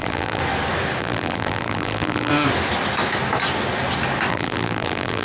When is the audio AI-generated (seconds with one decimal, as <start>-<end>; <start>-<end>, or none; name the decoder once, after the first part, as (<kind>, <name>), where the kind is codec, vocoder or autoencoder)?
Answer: 0.0-0.4 (vocoder, BigVGAN v2); 1.0-2.3; 4.3-5.2